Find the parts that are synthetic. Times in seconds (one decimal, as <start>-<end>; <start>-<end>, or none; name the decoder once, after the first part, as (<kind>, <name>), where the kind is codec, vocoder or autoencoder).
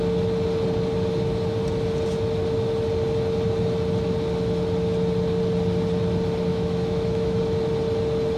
6.5-7.4 (autoencoder, DAC-VAE)